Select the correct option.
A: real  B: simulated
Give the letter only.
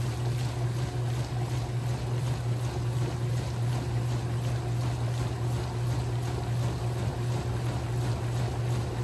A